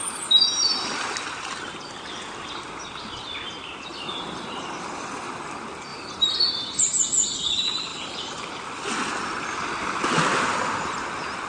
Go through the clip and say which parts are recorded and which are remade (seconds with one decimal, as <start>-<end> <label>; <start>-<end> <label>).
0.0-3.9 recorded; 3.9-5.4 remade; 5.4-5.9 recorded; 5.9-6.8 remade; 6.8-7.9 recorded; 7.9-8.5 remade; 8.5-11.5 recorded